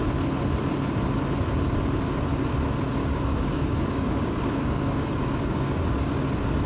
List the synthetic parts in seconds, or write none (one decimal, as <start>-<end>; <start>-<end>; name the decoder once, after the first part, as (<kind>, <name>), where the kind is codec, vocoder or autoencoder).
3.0-6.1 (codec, DAC)